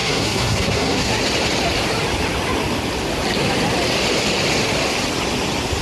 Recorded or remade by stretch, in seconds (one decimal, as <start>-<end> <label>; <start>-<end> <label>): 0.0-1.2 remade; 1.2-5.8 recorded